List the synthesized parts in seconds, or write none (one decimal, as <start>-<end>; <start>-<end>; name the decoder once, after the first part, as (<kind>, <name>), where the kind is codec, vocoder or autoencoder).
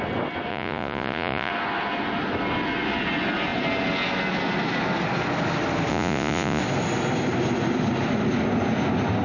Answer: 0.5-1.5 (vocoder, Vocos); 5.9-6.6